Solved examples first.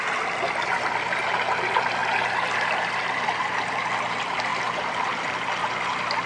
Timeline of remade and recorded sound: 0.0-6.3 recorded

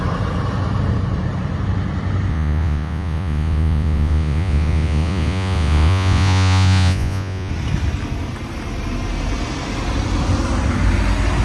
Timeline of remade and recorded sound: 0.0-2.3 recorded; 2.3-7.5 remade; 7.5-11.4 recorded

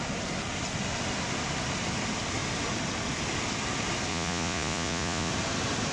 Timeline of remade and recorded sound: 0.0-4.1 recorded; 4.1-5.3 remade; 5.3-5.9 recorded

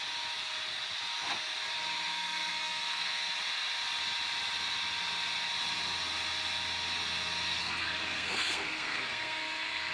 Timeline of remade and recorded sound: 0.0-2.1 recorded; 2.1-3.3 remade; 3.3-7.6 recorded; 7.6-9.9 remade

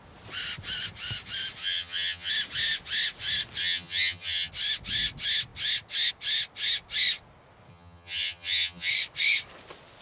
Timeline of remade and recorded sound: 0.0-1.6 recorded; 1.6-2.3 remade; 2.3-3.6 recorded; 3.6-4.5 remade; 4.5-7.7 recorded; 7.7-8.9 remade; 8.9-10.0 recorded